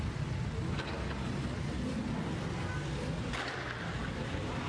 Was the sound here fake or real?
real